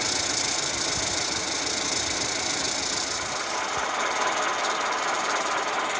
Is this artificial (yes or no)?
yes